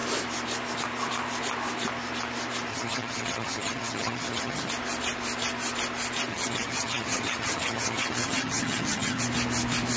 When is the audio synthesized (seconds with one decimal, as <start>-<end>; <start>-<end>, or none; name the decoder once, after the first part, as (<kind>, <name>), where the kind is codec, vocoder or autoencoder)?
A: 2.7-4.7 (vocoder, HiFi-GAN); 6.3-9.2